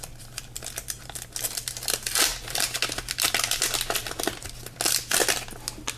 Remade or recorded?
recorded